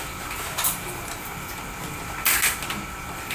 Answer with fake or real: real